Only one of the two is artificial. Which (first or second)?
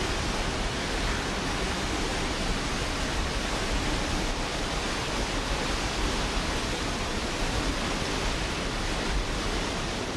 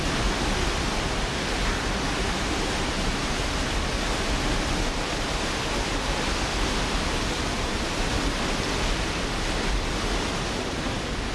first